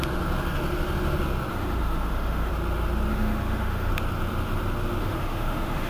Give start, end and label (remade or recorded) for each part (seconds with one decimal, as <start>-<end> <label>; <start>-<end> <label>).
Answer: 0.0-1.5 recorded; 1.5-2.5 remade; 2.5-3.1 recorded; 3.1-3.9 remade; 3.9-5.0 recorded; 5.0-5.9 remade